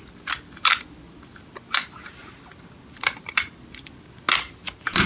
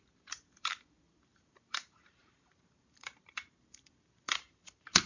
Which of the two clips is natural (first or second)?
first